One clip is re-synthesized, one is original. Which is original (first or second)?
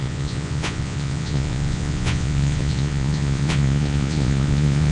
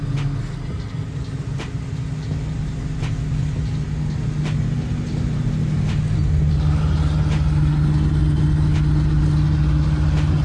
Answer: second